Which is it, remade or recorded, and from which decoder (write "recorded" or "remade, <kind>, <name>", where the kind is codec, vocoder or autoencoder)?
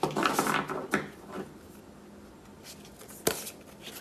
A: recorded